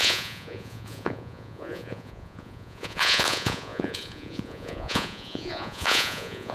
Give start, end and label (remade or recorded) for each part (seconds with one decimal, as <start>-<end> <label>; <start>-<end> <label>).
0.0-6.5 remade